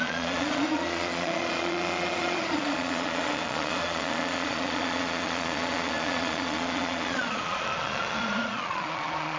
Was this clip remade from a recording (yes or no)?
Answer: yes